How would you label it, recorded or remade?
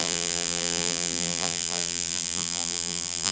remade